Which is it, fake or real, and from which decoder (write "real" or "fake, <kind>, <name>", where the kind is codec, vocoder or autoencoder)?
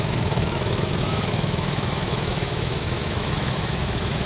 fake, autoencoder, DAC-VAE